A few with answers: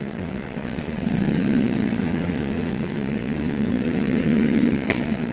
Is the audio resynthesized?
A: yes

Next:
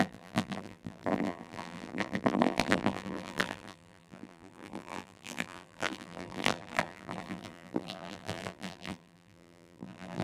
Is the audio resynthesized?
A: yes